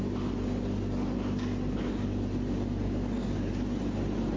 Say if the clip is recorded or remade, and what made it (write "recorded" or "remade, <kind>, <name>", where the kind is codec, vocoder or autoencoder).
recorded